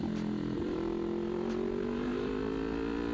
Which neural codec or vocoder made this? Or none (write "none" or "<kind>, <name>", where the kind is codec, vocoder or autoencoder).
none